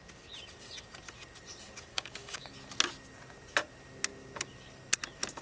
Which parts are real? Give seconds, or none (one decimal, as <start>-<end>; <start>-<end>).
0.0-1.9; 2.5-5.4